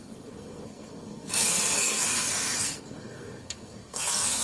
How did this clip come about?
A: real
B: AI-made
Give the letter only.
B